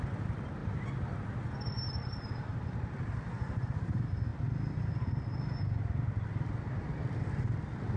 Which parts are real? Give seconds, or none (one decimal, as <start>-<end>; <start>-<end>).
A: 0.0-8.0